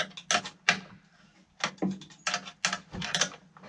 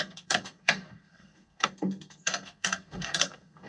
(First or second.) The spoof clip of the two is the second